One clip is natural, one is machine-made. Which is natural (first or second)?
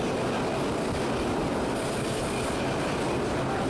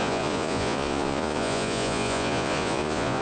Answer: first